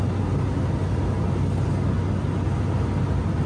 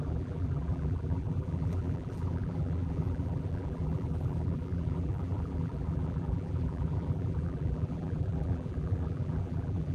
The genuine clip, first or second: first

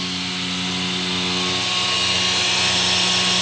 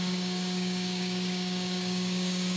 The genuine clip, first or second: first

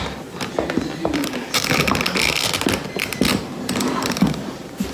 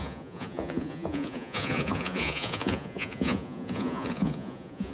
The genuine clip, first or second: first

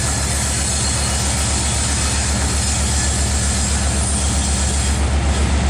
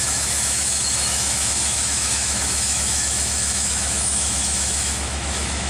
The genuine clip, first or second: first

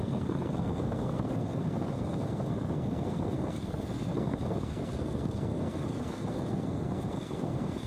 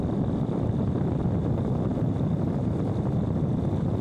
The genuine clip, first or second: second